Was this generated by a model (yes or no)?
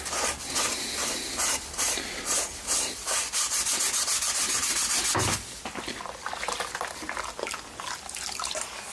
no